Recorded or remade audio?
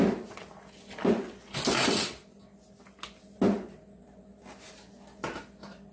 recorded